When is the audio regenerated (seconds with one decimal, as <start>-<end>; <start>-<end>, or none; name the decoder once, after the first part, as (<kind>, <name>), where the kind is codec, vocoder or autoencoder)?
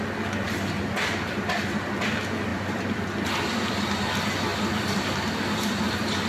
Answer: 2.5-3.7 (vocoder, BigVGAN v2); 4.5-6.3